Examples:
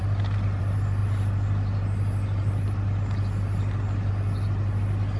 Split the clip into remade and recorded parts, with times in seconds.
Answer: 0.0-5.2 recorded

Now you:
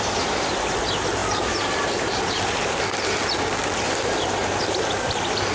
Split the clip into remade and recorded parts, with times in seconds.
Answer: 0.0-5.5 recorded

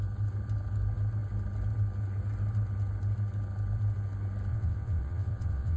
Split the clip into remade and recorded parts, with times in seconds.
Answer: 0.0-4.5 recorded; 4.5-5.8 remade

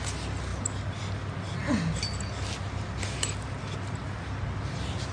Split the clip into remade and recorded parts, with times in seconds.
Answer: 0.0-5.1 recorded

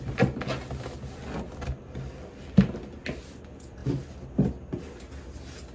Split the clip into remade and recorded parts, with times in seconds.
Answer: 0.0-5.7 recorded

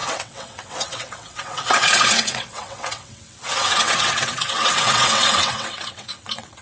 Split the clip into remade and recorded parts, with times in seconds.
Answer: 0.0-6.6 remade

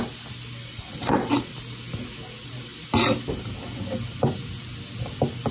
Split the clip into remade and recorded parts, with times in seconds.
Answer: 0.0-0.7 recorded; 0.7-1.3 remade; 1.3-5.5 recorded